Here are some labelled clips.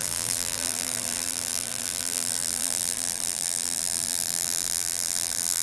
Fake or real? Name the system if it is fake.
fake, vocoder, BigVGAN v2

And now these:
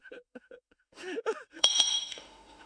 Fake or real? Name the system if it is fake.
fake, autoencoder, DAC-VAE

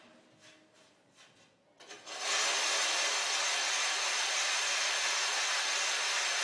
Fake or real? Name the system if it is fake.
real